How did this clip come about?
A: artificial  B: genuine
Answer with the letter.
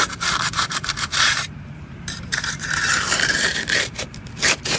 A